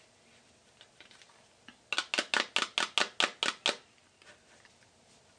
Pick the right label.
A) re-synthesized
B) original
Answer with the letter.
B